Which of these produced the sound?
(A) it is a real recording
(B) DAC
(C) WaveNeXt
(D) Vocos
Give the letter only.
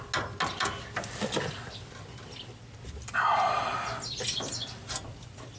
A